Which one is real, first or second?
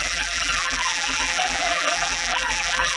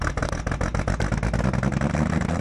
second